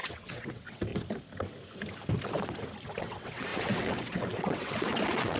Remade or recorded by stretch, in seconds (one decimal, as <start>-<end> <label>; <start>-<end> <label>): 0.0-0.9 remade; 0.9-3.0 recorded; 3.0-5.4 remade